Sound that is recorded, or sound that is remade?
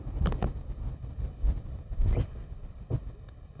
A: recorded